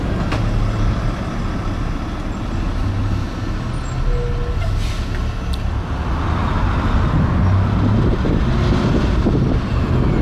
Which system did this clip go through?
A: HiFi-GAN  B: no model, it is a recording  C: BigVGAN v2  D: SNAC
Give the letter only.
B